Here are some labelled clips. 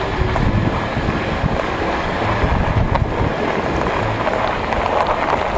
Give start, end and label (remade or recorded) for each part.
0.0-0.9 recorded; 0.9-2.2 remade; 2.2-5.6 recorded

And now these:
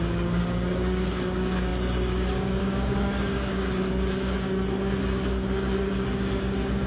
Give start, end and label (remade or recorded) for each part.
0.0-6.9 remade

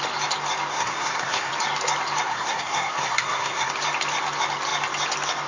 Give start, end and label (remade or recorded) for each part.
0.0-0.7 recorded; 0.7-1.5 remade; 1.5-2.3 recorded; 2.3-3.7 remade; 3.7-5.5 recorded

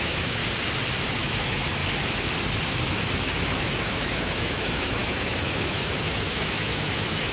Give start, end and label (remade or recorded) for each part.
0.0-0.4 remade; 0.4-1.0 recorded; 1.0-1.8 remade; 1.8-3.6 recorded; 3.6-7.3 remade